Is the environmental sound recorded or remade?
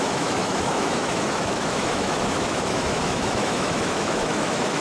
remade